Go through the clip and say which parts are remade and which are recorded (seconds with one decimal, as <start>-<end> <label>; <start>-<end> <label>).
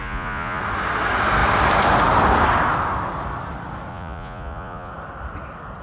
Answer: 0.0-0.6 remade; 0.6-3.9 recorded; 3.9-4.9 remade; 4.9-5.8 recorded